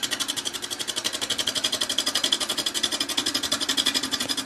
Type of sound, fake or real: fake